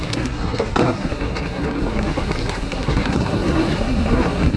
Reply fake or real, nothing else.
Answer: fake